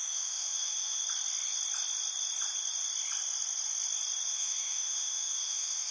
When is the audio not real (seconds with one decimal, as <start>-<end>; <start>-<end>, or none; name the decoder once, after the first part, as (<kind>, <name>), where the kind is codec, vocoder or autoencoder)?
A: 0.0-1.0 (autoencoder, DAC-VAE); 4.3-5.9